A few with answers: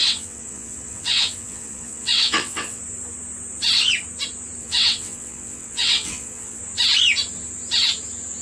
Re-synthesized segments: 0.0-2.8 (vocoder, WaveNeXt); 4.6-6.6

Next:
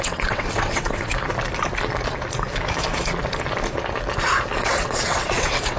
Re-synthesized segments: 0.0-1.1 (vocoder, WaveNeXt); 4.6-5.8

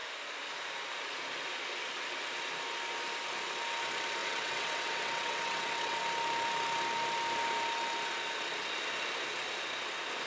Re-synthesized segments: 4.2-6.0 (vocoder, WaveNeXt)